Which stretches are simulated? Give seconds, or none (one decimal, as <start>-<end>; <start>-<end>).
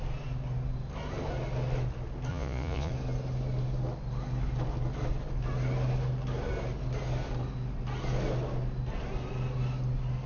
2.3-2.9